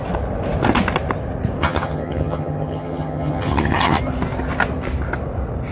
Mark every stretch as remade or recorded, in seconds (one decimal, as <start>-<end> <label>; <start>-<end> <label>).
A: 0.0-1.6 recorded; 1.6-4.0 remade; 4.0-5.7 recorded